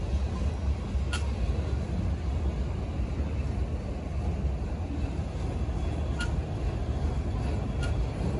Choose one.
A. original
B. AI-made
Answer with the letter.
A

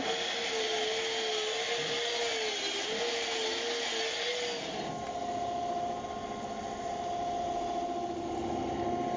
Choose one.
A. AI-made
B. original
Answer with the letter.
B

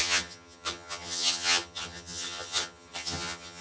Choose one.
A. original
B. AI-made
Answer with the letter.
B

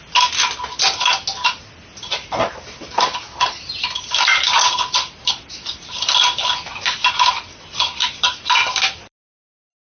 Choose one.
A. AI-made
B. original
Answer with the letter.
B